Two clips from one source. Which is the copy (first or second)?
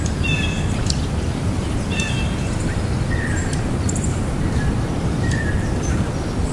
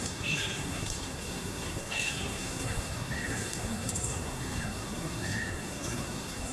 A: second